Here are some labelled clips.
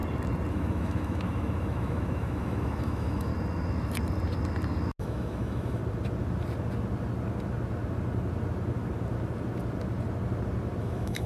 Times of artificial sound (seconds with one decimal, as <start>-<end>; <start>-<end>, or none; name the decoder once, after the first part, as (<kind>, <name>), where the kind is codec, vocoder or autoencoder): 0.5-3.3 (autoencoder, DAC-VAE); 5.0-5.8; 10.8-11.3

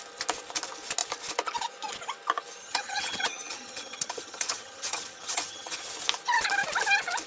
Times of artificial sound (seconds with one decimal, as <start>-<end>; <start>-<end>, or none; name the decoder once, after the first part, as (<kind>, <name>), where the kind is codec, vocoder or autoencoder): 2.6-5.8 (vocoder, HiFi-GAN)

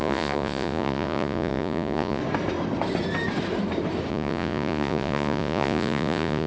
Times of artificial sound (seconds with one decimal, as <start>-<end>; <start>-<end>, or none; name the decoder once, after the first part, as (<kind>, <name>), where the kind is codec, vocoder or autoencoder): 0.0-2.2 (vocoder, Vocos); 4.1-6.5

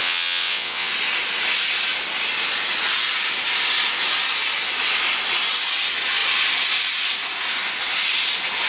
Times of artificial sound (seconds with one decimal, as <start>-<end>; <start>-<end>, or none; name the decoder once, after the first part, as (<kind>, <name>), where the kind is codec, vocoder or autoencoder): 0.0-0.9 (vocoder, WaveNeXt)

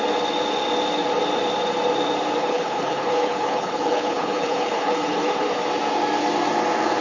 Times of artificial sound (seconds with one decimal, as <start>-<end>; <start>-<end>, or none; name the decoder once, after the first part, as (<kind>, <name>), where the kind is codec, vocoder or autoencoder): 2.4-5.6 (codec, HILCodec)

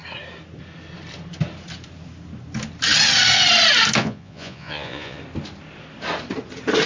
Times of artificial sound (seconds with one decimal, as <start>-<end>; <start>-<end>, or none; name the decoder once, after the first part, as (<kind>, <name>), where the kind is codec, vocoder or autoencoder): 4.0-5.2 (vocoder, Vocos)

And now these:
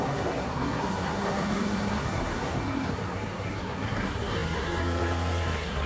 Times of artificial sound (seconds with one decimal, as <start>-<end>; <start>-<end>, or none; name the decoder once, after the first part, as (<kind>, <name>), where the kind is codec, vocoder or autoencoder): 0.0-5.9 (codec, SNAC)

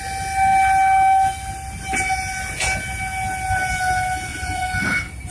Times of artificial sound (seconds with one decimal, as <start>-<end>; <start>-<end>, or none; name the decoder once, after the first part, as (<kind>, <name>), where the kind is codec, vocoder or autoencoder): 4.3-5.3 (vocoder, BigVGAN v2)